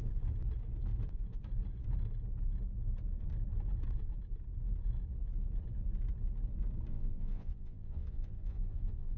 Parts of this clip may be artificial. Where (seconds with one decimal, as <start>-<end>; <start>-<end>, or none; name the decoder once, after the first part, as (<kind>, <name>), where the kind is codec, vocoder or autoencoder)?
6.9-9.2 (vocoder, Vocos)